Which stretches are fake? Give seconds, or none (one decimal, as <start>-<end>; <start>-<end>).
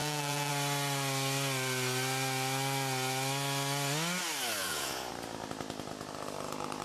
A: 0.0-0.5; 4.6-5.1